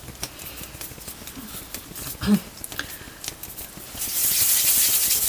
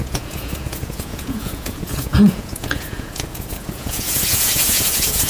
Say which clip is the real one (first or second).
first